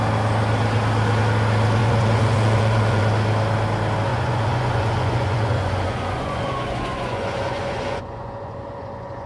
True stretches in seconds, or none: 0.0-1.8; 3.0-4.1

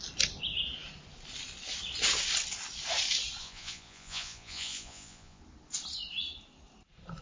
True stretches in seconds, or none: 0.0-3.4; 5.4-7.2

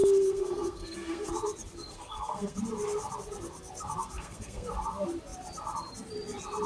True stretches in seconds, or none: 1.3-1.9; 2.6-4.0; 4.7-6.7

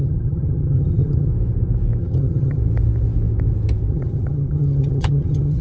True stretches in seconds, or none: 1.3-2.0; 2.6-3.9

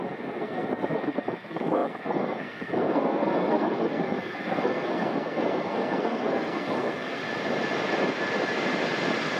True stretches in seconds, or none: 7.2-9.4

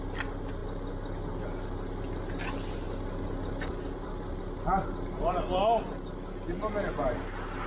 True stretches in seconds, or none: 0.0-7.7

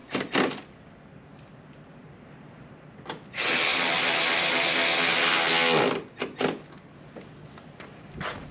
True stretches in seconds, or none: 0.0-8.5

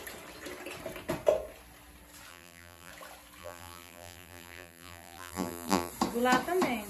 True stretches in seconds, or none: 0.0-2.3; 2.9-3.4; 5.9-6.9